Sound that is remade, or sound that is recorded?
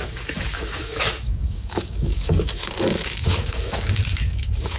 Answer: remade